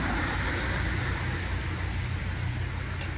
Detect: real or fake real